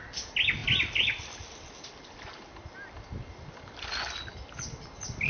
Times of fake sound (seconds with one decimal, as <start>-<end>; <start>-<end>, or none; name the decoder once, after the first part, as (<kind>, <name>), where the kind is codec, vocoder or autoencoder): none